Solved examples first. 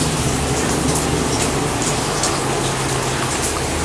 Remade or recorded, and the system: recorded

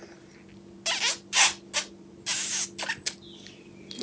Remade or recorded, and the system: recorded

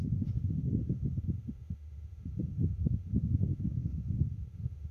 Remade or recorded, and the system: remade, autoencoder, DAC-VAE